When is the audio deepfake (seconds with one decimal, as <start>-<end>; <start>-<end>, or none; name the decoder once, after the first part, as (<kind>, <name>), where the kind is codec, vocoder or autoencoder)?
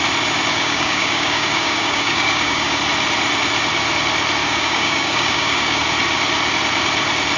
0.5-2.8 (codec, DAC); 4.4-5.8